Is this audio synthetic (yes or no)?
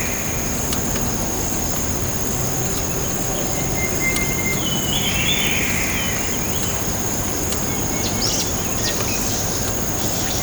no